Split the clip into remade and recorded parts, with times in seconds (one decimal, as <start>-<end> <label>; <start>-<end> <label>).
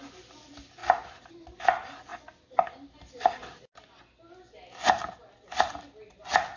0.0-6.6 recorded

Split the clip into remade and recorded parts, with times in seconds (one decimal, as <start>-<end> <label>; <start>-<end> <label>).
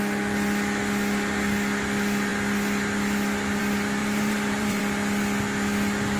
0.0-4.0 recorded; 4.0-4.8 remade; 4.8-6.2 recorded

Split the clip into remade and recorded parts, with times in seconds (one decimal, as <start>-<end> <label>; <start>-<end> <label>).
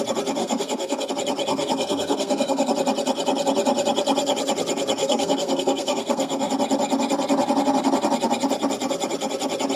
0.0-0.4 recorded; 0.4-1.1 remade; 1.1-1.5 recorded; 1.5-2.7 remade; 2.7-5.0 recorded; 5.0-6.5 remade; 6.5-9.8 recorded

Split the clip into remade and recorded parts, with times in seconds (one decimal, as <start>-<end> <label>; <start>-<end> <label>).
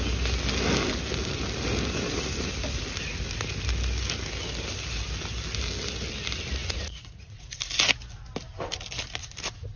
0.0-6.6 recorded; 6.6-7.5 remade; 7.5-9.8 recorded